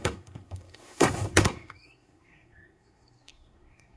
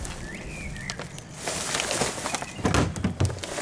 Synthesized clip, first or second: first